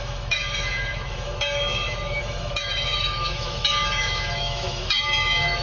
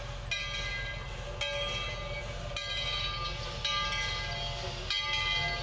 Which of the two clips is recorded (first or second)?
second